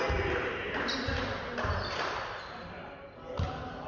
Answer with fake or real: real